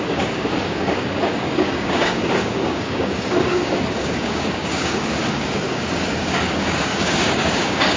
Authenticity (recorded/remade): remade